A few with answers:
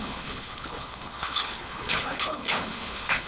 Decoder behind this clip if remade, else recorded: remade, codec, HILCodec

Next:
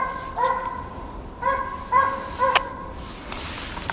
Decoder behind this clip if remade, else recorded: recorded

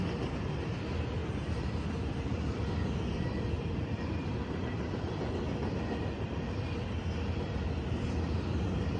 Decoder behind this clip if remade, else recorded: recorded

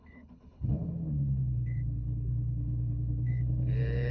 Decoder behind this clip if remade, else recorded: remade, codec, HILCodec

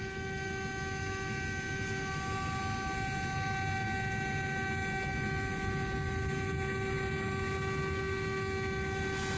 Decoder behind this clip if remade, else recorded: recorded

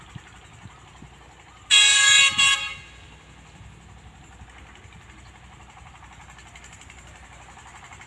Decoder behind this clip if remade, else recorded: recorded